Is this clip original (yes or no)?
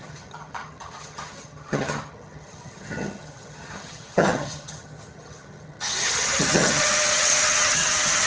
no